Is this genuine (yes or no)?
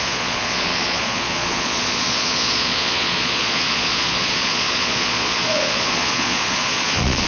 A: no